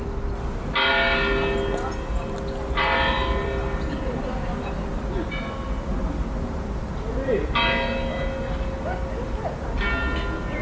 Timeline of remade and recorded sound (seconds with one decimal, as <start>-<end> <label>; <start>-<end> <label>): 0.0-10.6 recorded